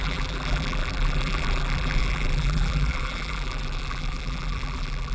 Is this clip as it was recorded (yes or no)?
no